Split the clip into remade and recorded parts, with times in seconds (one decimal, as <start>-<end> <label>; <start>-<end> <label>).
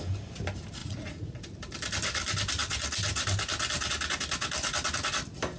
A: 0.0-0.8 recorded; 0.8-1.4 remade; 1.4-5.6 recorded